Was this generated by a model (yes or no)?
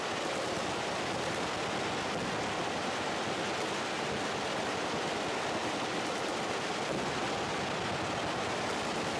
no